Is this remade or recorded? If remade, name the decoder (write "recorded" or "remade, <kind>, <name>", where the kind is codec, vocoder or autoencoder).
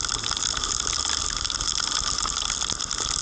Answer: recorded